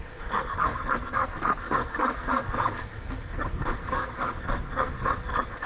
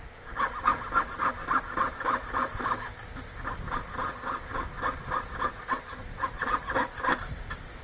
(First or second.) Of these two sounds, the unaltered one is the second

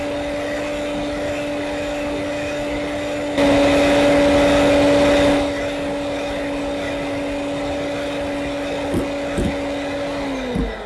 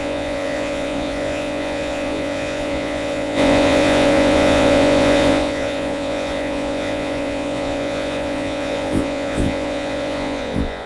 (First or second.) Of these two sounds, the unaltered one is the first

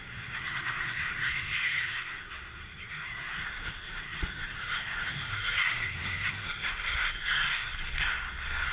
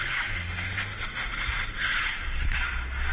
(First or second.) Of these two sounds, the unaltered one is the second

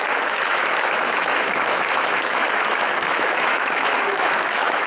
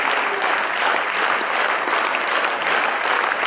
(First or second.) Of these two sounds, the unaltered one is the second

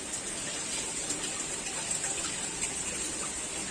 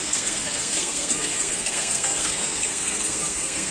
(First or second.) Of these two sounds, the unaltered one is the first